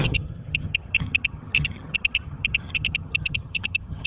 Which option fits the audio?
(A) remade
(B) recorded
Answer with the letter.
A